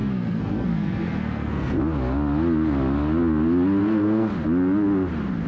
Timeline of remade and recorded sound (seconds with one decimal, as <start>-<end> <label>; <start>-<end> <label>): 0.0-1.8 remade; 1.8-3.8 recorded; 3.8-4.3 remade; 4.3-5.5 recorded